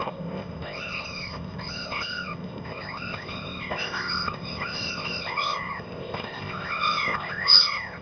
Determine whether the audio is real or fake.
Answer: fake